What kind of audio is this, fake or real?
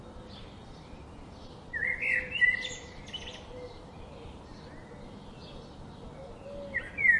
real